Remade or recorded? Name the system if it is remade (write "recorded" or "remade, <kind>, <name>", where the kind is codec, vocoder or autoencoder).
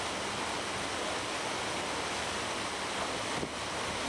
recorded